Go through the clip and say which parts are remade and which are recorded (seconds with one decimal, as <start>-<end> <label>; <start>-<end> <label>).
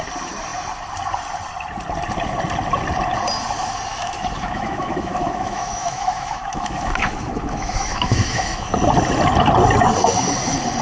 0.0-3.9 recorded; 3.9-8.7 remade; 8.7-10.8 recorded